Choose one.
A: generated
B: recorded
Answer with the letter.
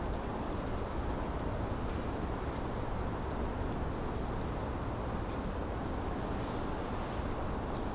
B